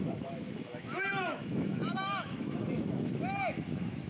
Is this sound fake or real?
fake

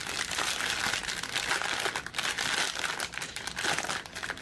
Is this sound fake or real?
real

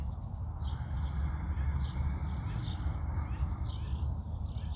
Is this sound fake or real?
real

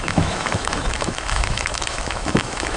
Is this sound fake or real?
fake